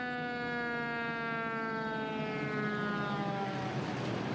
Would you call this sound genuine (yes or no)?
yes